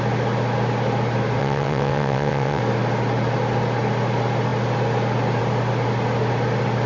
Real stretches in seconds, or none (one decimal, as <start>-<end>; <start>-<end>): 0.0-1.4; 2.6-6.9